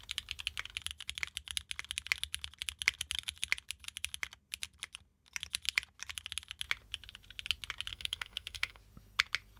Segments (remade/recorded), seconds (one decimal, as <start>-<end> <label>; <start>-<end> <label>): 0.0-7.9 recorded; 7.9-8.8 remade; 8.8-9.6 recorded